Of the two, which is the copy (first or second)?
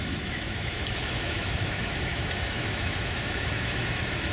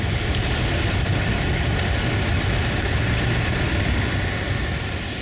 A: first